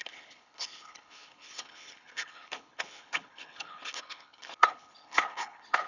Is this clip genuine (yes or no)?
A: no